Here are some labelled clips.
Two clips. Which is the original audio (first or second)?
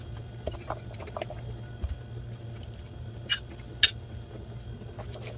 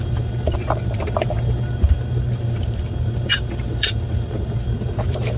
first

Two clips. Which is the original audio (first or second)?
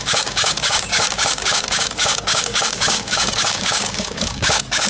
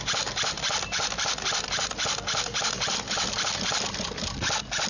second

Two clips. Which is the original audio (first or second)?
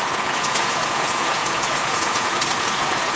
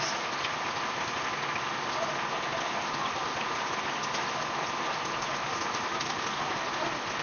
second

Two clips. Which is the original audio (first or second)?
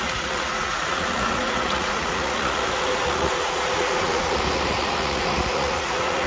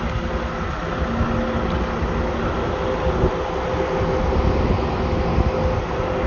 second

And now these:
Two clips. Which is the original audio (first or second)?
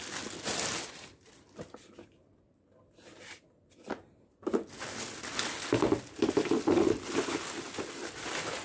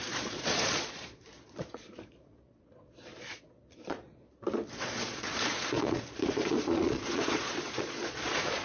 first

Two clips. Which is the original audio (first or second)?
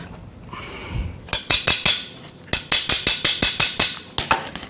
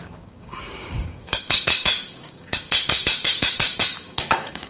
first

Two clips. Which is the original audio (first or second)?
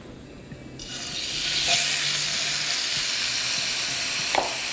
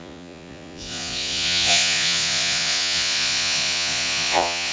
first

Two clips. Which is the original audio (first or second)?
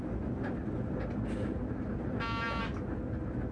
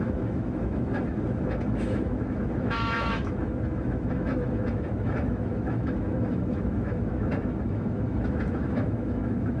first